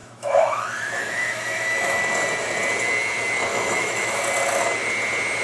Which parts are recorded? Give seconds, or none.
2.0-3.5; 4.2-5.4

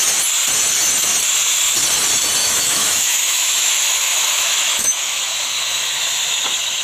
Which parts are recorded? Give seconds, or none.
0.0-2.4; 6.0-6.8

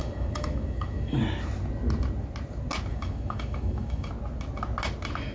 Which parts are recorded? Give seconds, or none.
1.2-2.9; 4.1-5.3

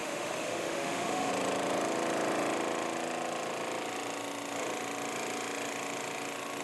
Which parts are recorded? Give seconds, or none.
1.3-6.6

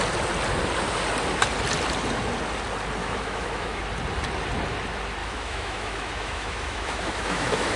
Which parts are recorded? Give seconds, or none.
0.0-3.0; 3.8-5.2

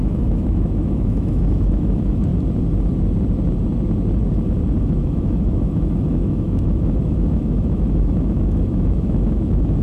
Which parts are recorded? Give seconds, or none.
2.3-4.8

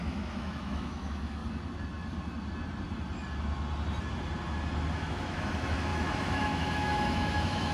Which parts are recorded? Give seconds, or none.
1.4-4.9